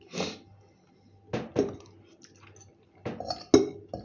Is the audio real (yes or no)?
yes